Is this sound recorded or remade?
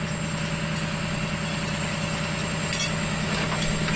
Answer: recorded